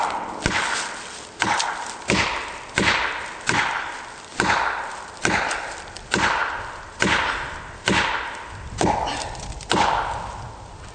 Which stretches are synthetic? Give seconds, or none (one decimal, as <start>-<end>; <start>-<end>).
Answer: none